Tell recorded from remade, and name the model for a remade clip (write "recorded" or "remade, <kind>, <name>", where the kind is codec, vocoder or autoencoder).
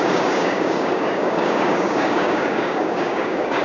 remade, codec, DAC